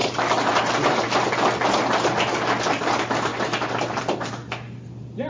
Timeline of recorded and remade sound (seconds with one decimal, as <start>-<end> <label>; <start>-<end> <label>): 0.0-0.5 remade; 0.5-5.3 recorded